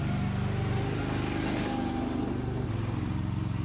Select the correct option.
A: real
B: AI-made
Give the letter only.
A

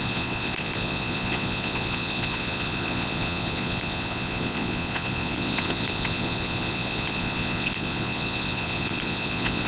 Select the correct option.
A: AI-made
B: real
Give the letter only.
A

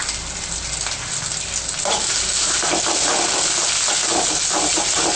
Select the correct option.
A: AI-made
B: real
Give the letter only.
B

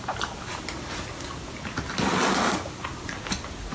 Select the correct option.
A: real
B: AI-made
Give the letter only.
A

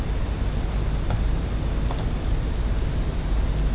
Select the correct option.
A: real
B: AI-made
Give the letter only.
A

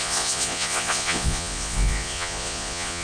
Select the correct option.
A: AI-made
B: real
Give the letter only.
A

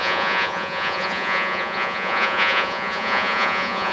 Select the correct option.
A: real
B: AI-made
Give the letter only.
B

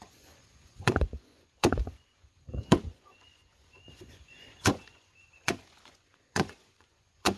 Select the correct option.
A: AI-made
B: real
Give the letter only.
A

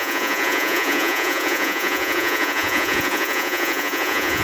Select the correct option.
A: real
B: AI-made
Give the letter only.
B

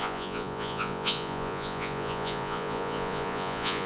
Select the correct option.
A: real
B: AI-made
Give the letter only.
B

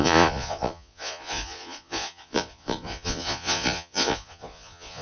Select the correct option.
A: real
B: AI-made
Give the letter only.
B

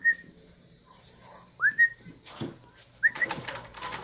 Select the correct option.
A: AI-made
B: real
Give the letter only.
B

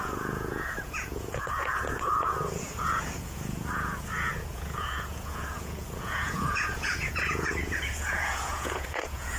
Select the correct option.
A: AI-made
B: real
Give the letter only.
A